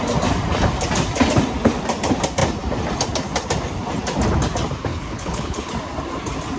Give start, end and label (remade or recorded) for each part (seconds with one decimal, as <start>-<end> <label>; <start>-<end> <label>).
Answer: 0.0-4.9 recorded; 4.9-5.7 remade; 5.7-6.6 recorded